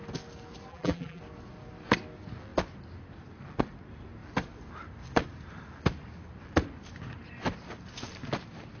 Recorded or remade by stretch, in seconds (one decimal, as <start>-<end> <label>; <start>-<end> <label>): 0.0-0.7 recorded; 0.7-1.2 remade; 1.2-8.8 recorded